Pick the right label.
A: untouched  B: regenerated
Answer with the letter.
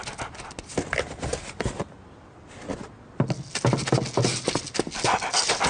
A